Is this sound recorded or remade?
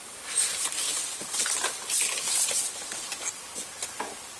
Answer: remade